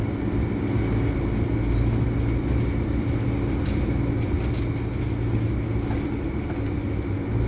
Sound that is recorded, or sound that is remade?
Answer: recorded